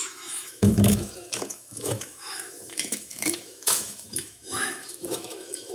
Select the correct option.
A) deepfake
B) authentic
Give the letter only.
A